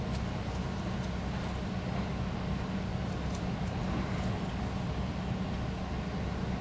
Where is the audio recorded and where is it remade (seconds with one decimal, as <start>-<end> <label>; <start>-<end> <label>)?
0.0-6.6 recorded